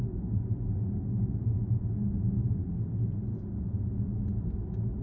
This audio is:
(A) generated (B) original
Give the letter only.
B